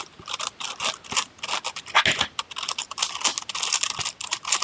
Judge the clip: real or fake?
real